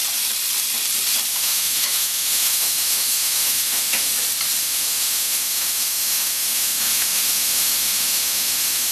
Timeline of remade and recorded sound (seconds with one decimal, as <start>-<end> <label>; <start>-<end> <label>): 0.0-1.3 recorded; 1.3-4.1 remade; 4.1-4.6 recorded; 4.6-8.9 remade